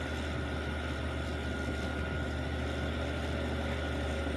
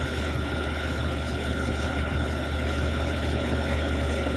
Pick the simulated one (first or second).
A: second